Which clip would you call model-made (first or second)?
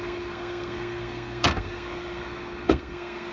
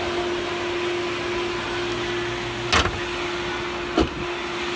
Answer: first